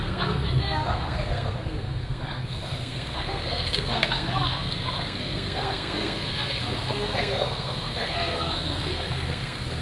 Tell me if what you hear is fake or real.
fake